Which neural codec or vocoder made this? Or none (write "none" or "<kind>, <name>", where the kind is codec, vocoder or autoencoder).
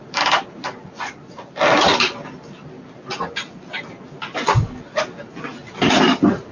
none